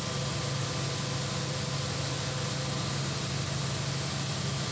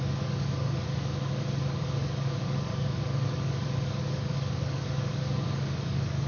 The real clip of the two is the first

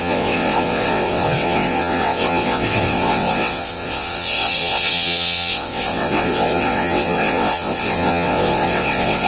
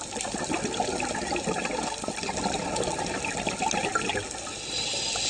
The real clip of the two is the second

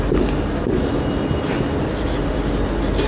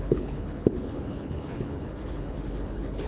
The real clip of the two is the first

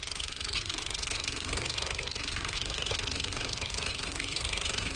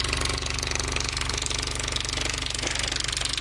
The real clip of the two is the second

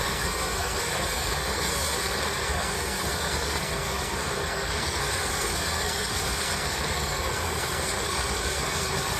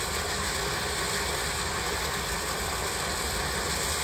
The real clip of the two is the second